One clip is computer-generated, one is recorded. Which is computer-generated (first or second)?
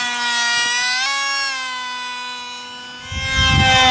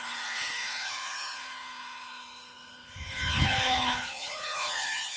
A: second